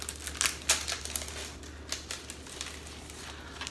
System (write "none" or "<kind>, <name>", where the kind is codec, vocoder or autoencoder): none